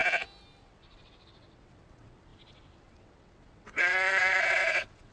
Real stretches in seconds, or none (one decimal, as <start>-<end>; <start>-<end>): 0.0-0.6